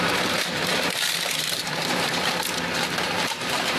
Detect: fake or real fake